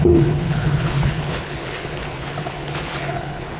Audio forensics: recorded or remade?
remade